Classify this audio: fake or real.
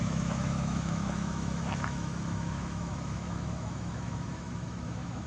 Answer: fake